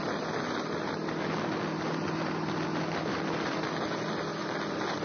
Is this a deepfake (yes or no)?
no